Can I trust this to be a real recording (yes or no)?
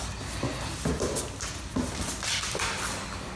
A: yes